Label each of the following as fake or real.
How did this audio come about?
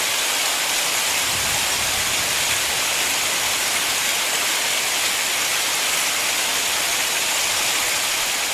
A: real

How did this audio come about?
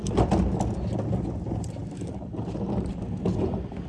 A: real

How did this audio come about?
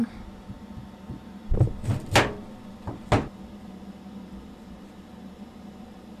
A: real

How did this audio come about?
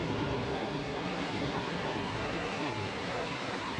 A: fake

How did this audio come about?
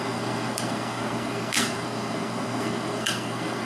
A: fake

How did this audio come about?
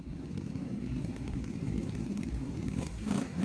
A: fake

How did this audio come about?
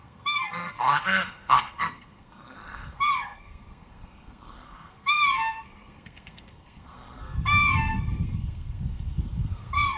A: fake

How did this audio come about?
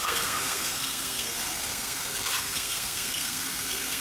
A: fake